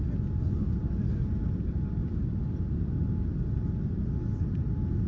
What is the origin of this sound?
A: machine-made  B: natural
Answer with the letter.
B